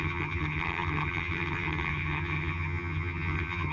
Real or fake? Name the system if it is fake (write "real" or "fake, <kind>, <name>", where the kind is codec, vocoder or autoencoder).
fake, vocoder, HiFi-GAN